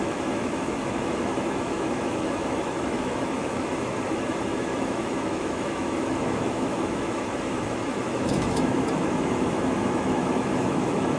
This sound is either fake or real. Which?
fake